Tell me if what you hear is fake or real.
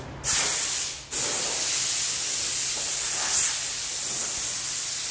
real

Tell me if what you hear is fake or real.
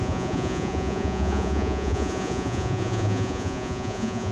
fake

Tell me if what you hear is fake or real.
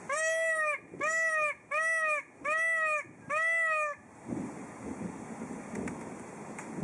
real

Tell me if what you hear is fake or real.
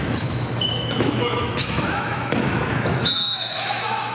fake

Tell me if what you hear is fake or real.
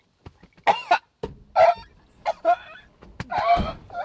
real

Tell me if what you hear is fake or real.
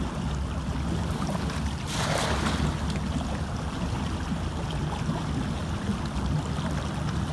real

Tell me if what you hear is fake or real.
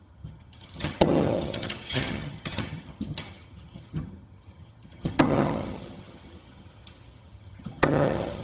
fake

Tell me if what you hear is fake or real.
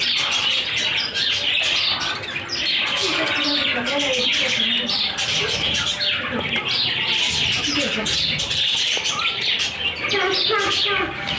fake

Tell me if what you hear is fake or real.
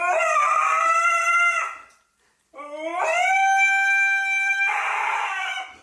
real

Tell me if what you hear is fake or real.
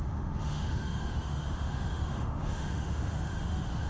fake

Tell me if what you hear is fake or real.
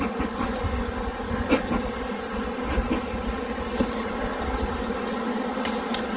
real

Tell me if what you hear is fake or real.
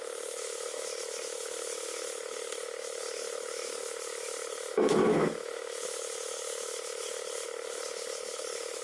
fake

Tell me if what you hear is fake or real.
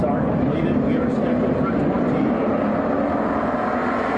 real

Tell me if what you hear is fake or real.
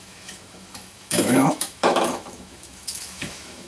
fake